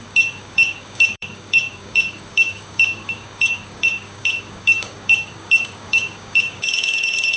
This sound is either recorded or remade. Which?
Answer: remade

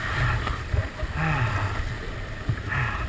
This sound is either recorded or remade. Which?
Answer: recorded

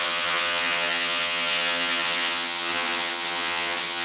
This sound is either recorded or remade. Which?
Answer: remade